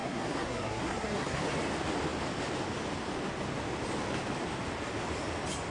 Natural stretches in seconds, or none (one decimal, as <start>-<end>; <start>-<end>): 1.4-5.7